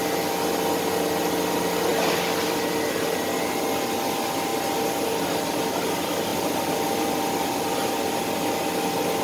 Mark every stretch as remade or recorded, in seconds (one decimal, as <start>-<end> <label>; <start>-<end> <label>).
0.0-1.9 recorded; 1.9-3.1 remade; 3.1-6.3 recorded; 6.3-8.5 remade; 8.5-9.2 recorded